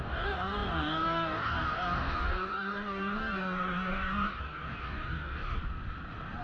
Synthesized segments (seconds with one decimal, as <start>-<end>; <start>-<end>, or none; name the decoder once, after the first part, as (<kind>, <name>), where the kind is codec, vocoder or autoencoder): 0.0-5.6 (codec, DAC)